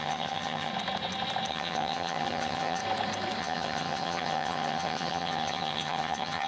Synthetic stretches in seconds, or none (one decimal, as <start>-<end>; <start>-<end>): 0.0-0.7; 1.5-2.8; 3.4-6.5

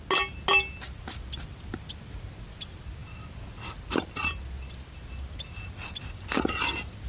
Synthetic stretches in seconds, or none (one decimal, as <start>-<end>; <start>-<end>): none

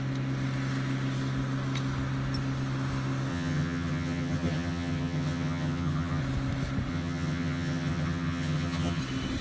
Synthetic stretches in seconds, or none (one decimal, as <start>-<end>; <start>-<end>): 3.3-6.2; 6.9-9.0

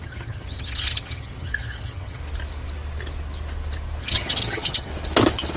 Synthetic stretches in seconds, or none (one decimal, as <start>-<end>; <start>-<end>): 0.0-2.2; 4.0-4.9

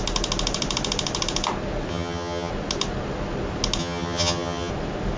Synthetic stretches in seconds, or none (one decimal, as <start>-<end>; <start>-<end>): 1.9-2.5; 3.8-4.7

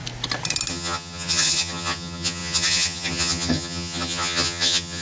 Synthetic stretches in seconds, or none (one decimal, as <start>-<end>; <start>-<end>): 0.7-5.0